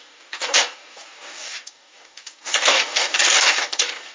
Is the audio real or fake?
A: fake